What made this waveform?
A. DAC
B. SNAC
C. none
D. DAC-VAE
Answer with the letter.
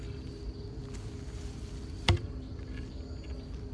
C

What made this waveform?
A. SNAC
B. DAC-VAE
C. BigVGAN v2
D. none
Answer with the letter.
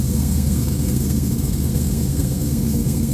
A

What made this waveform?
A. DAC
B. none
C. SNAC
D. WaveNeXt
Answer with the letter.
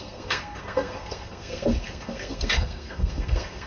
C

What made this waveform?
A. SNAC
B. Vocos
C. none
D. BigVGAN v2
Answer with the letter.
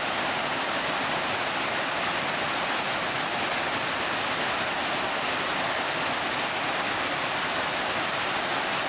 C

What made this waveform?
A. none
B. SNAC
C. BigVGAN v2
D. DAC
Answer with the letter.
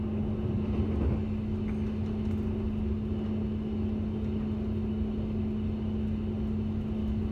A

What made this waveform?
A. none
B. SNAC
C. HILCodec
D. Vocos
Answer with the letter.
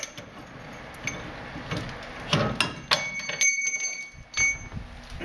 A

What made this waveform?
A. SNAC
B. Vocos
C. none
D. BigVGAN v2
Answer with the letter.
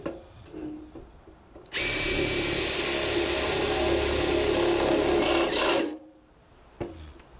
C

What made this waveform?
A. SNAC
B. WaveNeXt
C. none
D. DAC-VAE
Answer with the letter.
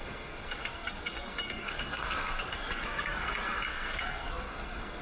A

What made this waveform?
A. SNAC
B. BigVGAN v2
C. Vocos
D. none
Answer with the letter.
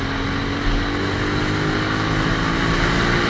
D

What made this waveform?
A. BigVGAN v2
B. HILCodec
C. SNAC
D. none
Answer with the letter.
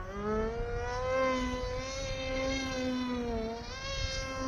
D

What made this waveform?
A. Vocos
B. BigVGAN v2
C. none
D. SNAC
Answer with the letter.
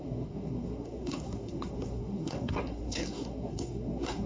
D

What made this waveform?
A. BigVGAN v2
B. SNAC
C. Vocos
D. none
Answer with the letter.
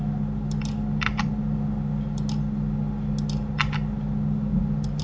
D